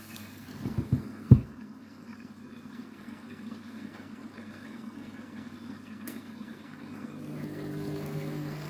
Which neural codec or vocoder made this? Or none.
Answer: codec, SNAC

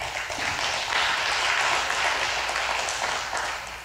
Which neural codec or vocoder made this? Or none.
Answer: none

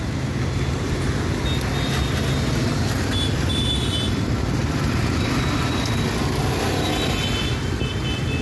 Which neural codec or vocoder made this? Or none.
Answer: none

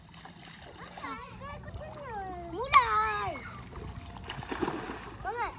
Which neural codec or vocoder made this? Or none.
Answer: none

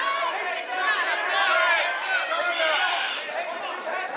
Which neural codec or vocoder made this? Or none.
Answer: none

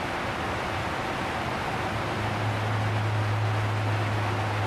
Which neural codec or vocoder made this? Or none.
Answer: none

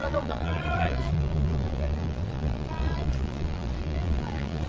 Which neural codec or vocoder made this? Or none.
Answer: vocoder, Vocos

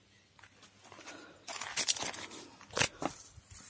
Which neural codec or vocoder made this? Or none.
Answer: none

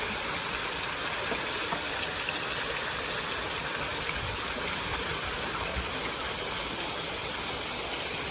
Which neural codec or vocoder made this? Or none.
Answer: none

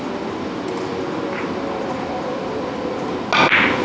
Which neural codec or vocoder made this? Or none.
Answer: none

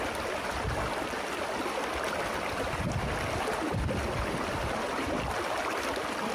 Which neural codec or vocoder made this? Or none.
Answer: none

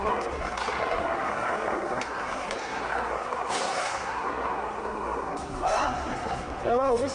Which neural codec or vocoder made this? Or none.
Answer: codec, SNAC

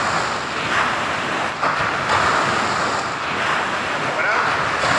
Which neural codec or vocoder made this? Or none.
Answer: none